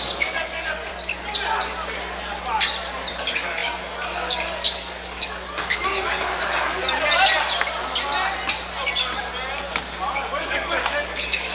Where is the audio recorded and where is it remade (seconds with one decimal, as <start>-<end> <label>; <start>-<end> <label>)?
0.0-0.9 remade; 0.9-3.1 recorded; 3.1-6.8 remade; 6.8-10.4 recorded; 10.4-11.5 remade